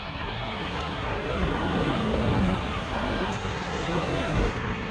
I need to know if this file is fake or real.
fake